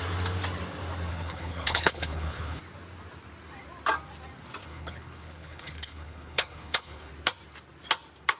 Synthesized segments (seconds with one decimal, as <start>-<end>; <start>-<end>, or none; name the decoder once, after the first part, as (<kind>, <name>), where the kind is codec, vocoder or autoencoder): 1.1-2.6 (codec, HILCodec); 4.6-7.1